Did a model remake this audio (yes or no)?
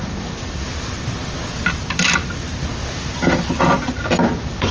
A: no